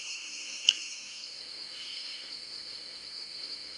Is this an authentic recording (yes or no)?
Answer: no